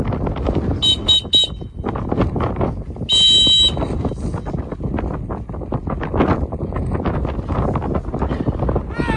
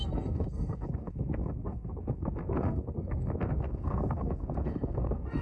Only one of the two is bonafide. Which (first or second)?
first